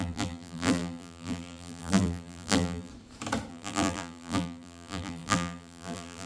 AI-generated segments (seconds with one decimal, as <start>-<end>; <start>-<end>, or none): 0.0-2.9; 3.5-6.3